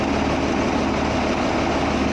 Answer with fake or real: real